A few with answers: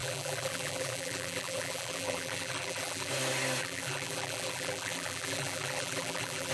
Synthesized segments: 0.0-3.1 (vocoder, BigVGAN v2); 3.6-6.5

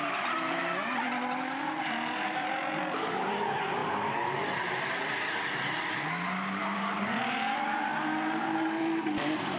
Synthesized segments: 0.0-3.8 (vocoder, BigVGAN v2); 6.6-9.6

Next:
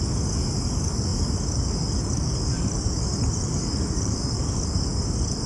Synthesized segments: 1.1-4.4 (vocoder, BigVGAN v2)

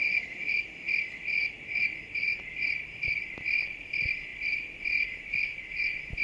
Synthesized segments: 0.0-0.4 (vocoder, BigVGAN v2); 2.4-4.3

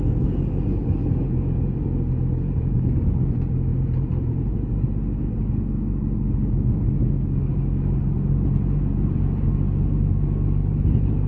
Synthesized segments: 3.7-4.5 (vocoder, BigVGAN v2); 7.5-9.5